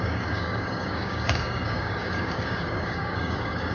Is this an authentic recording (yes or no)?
no